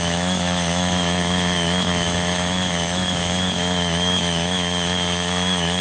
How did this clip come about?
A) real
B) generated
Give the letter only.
B